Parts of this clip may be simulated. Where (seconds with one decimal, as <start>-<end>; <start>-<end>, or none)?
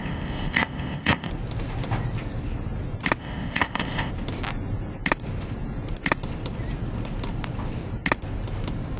0.0-1.3; 3.2-4.1